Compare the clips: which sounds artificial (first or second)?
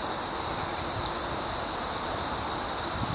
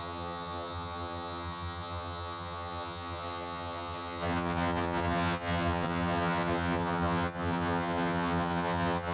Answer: second